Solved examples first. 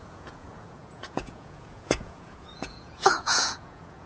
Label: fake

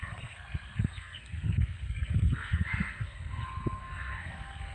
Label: fake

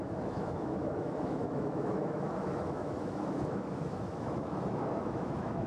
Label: fake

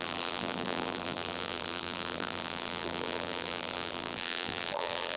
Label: fake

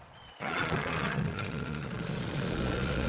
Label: fake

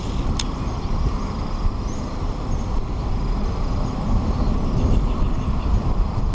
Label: real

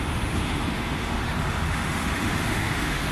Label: fake